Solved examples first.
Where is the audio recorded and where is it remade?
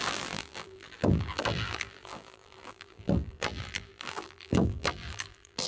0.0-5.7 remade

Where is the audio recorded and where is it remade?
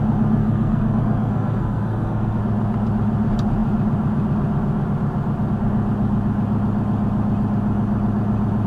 0.0-0.4 recorded; 0.4-2.4 remade; 2.4-8.7 recorded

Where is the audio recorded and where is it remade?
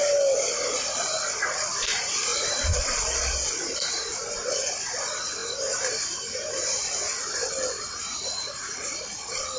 0.0-2.3 remade; 2.3-4.7 recorded; 4.7-5.4 remade; 5.4-7.5 recorded; 7.5-9.6 remade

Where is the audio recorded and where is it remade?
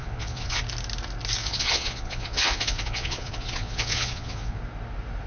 0.0-0.6 remade; 0.6-1.4 recorded; 1.4-4.6 remade; 4.6-5.3 recorded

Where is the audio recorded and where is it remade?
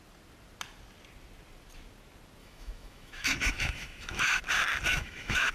0.0-2.4 recorded; 2.4-4.4 remade; 4.4-4.9 recorded; 4.9-5.5 remade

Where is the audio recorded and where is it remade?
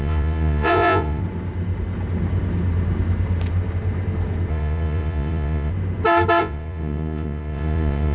0.0-1.2 remade; 1.2-4.5 recorded; 4.5-5.7 remade; 5.7-6.4 recorded; 6.4-8.1 remade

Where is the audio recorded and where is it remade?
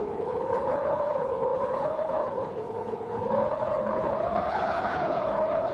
0.0-5.7 remade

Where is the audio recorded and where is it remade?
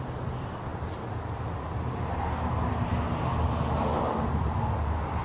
0.0-5.2 recorded